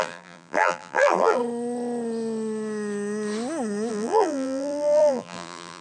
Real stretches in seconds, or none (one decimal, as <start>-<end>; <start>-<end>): 1.4-3.9